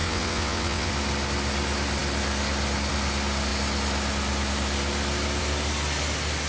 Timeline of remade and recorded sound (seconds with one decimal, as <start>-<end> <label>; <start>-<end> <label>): 0.0-0.9 remade; 0.9-6.5 recorded